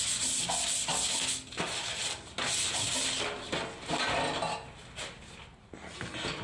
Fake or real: real